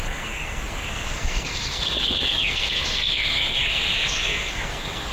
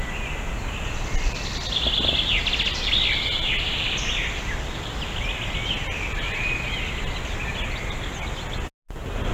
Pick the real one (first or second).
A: second